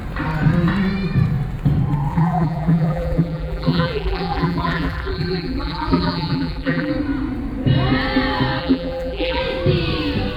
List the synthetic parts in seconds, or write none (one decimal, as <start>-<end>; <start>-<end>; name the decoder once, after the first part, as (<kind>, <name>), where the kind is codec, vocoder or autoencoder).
2.1-6.9 (vocoder, BigVGAN v2); 8.6-9.4